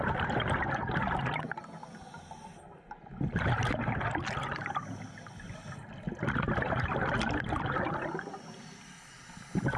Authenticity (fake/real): real